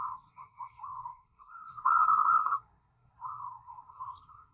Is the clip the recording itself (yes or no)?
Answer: no